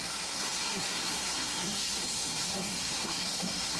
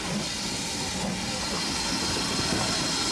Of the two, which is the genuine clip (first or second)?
second